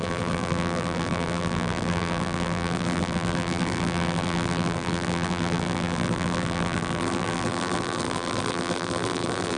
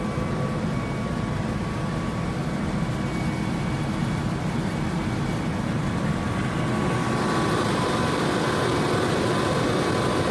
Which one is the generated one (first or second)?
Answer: first